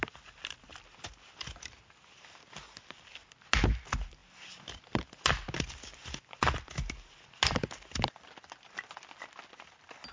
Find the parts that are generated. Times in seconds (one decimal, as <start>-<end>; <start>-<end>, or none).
none